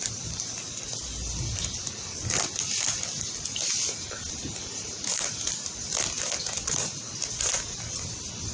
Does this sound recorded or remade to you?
recorded